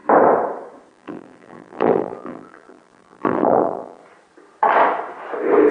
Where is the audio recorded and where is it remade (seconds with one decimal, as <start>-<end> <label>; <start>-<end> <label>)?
0.0-0.9 recorded; 0.9-4.0 remade; 4.0-5.7 recorded